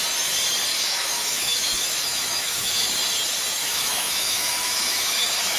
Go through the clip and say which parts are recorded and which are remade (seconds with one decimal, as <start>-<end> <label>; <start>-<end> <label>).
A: 0.0-0.7 recorded; 0.7-2.9 remade; 2.9-3.6 recorded; 3.6-5.6 remade